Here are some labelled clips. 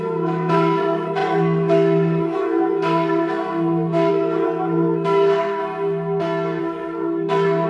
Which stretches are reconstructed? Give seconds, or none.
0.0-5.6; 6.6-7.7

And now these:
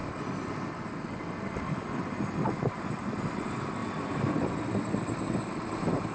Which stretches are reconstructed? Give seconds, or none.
3.8-4.8

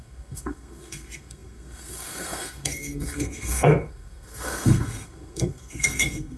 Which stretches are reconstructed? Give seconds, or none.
0.0-6.4

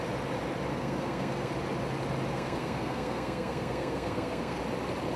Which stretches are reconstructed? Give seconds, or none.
0.7-1.5; 2.3-4.6

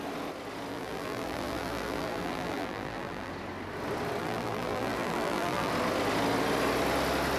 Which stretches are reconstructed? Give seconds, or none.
0.7-3.3; 4.2-5.7

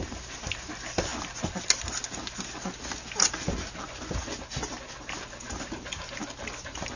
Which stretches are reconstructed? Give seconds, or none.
none

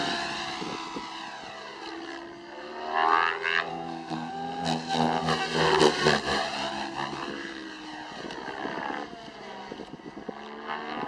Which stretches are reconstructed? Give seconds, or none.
3.7-4.3